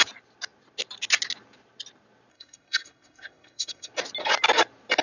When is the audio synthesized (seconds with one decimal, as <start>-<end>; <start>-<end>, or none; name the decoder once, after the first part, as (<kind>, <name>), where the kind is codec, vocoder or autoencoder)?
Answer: 2.3-3.9 (codec, SNAC)